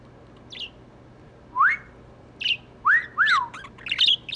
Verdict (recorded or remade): recorded